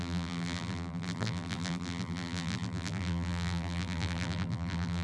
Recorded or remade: remade